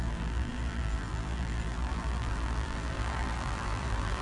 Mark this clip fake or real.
fake